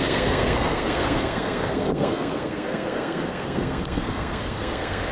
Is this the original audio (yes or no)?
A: no